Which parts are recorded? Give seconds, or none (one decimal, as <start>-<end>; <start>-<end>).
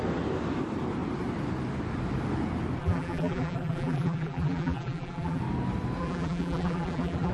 0.0-2.8; 5.4-6.0